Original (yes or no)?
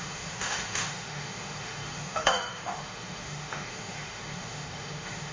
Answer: no